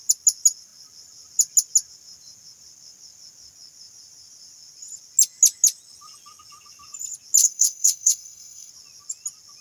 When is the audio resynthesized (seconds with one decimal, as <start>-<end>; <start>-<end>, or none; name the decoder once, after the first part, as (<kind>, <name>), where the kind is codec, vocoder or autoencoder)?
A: 7.4-8.7 (codec, SNAC)